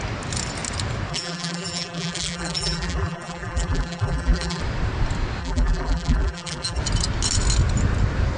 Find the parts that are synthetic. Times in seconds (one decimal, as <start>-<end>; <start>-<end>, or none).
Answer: 1.1-4.6; 5.4-6.8